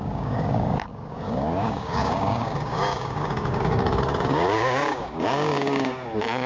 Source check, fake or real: fake